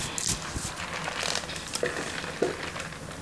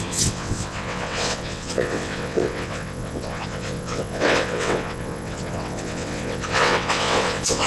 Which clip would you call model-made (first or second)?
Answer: second